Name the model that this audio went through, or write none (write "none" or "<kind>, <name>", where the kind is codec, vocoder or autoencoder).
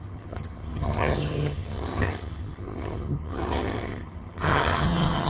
vocoder, HiFi-GAN